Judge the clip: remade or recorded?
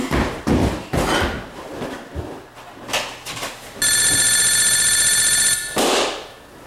recorded